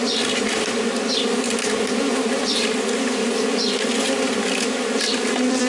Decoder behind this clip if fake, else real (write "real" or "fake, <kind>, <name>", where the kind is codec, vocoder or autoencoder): real